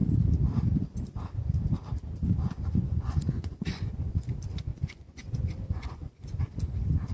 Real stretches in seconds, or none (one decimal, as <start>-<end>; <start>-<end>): 0.0-2.2; 4.3-4.7; 6.4-7.1